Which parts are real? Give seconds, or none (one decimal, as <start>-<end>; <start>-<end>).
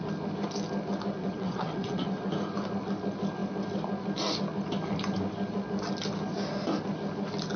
0.0-1.2; 2.3-7.6